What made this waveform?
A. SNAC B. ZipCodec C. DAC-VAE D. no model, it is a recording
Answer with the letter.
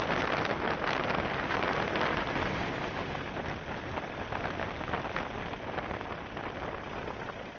D